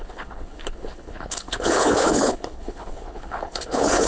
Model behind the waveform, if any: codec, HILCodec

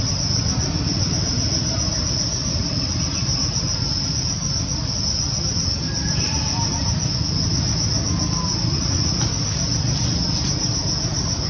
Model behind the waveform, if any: none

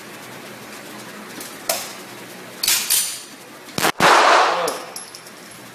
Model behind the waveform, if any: none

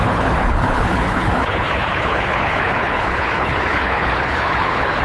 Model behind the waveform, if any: codec, HILCodec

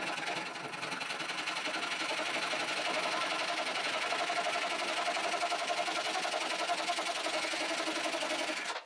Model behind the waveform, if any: none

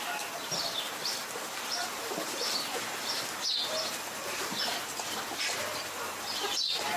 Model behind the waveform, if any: none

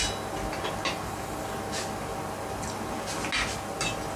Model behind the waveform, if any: none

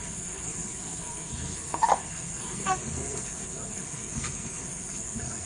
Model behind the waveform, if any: codec, SNAC